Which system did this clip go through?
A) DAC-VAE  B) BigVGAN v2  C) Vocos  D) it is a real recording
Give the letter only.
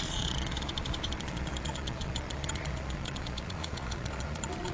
C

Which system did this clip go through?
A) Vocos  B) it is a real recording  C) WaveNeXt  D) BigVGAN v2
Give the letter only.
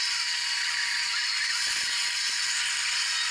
B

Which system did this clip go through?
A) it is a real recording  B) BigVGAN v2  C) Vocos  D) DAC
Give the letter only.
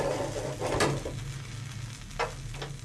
A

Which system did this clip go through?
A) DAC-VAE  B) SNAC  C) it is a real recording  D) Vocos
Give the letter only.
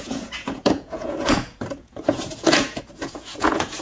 D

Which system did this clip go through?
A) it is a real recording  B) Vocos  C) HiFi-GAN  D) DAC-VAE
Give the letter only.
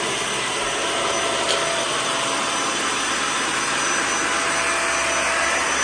A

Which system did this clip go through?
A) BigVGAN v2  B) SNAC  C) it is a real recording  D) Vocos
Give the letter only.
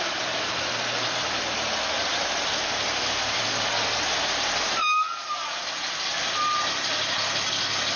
C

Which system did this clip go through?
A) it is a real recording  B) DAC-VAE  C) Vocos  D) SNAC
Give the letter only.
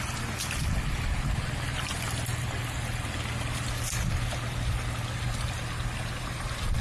A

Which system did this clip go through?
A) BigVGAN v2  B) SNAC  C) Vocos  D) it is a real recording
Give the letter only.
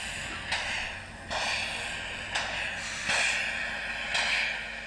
D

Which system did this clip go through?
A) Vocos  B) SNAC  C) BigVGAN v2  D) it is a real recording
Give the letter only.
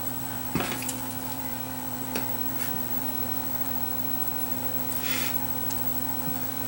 A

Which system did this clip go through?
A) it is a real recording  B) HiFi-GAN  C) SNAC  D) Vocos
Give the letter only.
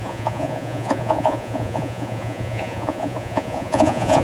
D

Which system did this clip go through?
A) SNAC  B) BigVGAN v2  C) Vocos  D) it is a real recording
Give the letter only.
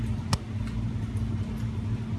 D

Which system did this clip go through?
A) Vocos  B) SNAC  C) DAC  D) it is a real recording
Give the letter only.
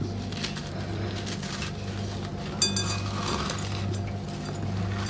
D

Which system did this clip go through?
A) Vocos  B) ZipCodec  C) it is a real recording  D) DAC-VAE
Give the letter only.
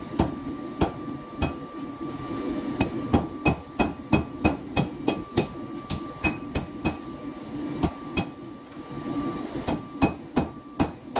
C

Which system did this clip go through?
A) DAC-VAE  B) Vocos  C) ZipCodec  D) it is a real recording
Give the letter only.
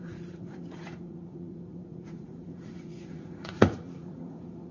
B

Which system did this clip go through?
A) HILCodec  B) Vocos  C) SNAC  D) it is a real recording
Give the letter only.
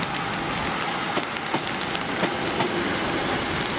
D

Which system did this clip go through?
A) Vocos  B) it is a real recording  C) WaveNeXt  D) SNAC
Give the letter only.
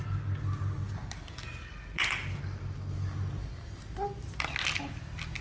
B